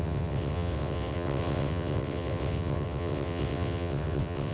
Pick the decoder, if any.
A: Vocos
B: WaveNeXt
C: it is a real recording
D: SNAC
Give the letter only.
B